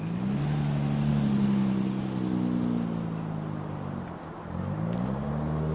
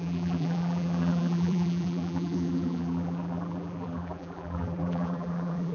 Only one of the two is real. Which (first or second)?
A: first